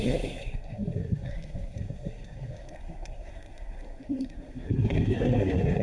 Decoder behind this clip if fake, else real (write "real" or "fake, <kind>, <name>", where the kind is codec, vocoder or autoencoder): fake, codec, SNAC